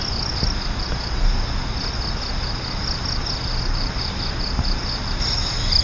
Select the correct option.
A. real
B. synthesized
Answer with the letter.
A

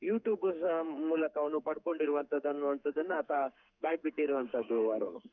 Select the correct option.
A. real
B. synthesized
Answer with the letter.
B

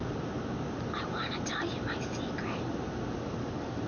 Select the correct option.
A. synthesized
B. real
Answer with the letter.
B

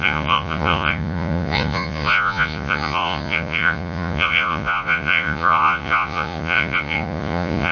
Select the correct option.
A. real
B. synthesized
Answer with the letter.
B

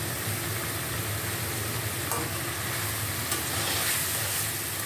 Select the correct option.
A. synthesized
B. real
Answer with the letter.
B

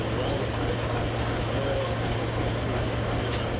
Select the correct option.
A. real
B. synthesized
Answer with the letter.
A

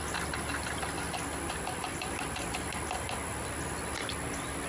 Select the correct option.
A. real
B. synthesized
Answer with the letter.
A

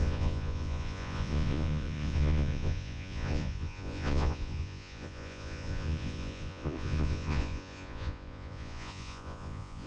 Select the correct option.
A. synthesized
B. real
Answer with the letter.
A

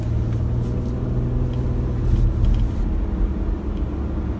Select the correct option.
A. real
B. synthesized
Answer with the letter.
A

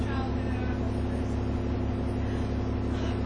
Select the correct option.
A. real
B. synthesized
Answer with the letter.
A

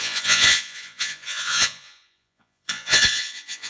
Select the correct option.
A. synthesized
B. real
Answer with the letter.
A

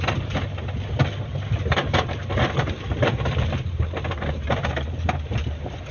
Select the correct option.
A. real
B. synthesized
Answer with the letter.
B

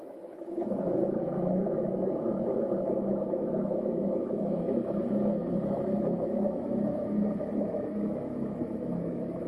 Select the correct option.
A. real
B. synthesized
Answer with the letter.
B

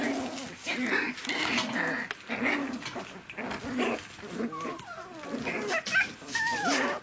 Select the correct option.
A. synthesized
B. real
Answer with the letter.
B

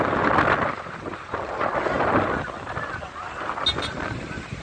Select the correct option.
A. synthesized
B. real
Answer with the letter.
B